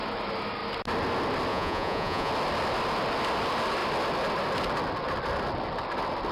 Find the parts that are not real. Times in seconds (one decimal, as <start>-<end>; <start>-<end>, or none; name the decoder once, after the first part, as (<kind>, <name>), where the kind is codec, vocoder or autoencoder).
1.5-2.3 (vocoder, Vocos)